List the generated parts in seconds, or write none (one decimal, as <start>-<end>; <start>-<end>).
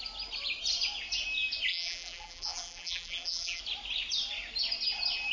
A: 1.7-3.6